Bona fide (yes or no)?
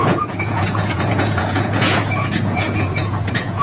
no